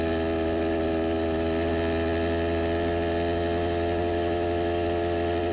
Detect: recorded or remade recorded